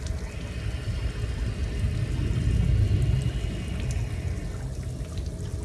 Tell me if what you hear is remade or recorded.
recorded